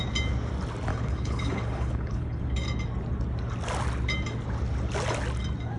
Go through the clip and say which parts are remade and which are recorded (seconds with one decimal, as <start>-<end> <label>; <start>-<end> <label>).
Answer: 0.0-0.9 recorded; 0.9-2.4 remade; 2.4-5.8 recorded